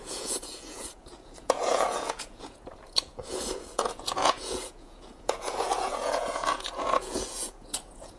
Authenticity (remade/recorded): remade